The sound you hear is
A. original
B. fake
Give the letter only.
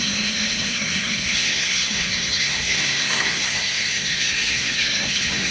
B